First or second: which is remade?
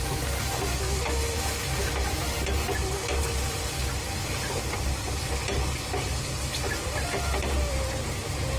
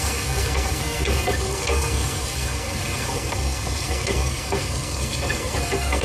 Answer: second